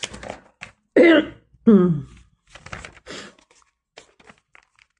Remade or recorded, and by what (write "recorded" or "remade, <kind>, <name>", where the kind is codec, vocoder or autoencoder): recorded